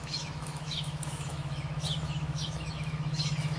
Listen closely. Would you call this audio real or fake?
fake